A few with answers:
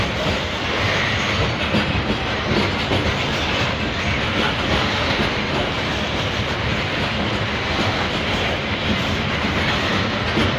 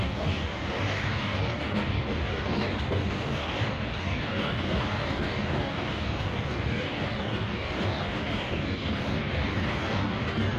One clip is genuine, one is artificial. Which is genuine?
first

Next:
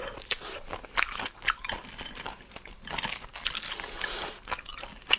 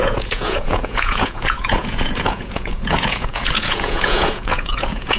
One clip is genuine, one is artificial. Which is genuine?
first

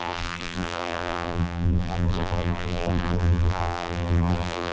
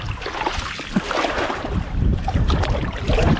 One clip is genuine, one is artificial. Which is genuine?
second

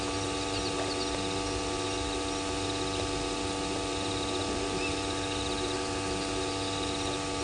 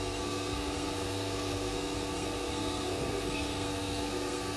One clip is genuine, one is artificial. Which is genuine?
first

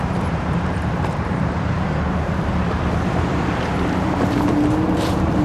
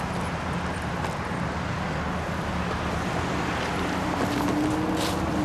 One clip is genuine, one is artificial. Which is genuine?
second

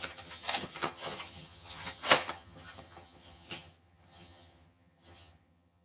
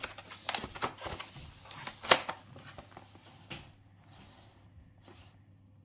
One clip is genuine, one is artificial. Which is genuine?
second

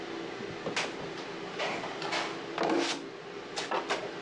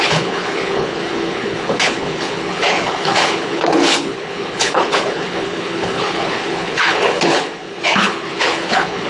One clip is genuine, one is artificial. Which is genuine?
first